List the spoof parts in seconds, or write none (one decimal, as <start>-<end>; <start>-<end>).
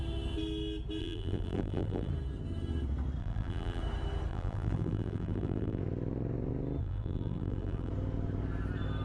1.0-2.1; 3.2-3.8; 4.3-5.8; 6.8-7.9